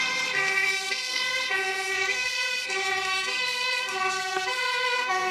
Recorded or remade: remade